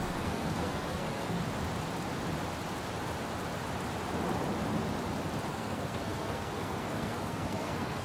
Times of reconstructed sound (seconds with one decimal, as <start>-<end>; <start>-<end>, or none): 0.0-1.4; 5.5-8.0